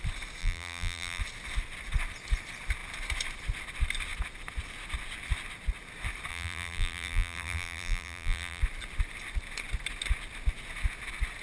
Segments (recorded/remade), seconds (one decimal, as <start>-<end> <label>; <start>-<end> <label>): 0.0-0.4 recorded; 0.4-1.2 remade; 1.2-6.3 recorded; 6.3-8.6 remade; 8.6-11.4 recorded

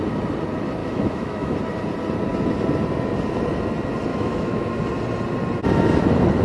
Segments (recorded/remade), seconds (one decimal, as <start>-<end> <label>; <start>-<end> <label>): 0.0-0.8 recorded; 0.8-1.6 remade; 1.6-4.1 recorded; 4.1-4.8 remade; 4.8-6.4 recorded